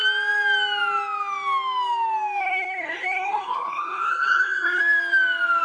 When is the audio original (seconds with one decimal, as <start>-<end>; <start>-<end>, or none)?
0.0-2.4; 4.8-5.6